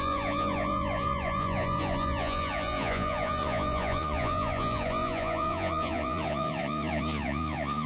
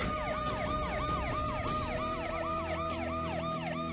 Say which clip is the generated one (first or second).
first